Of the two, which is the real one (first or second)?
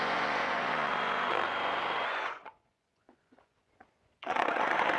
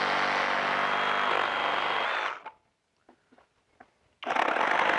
second